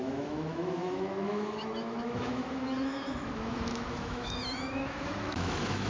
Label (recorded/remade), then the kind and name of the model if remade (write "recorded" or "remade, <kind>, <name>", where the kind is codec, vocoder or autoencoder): remade, autoencoder, DAC-VAE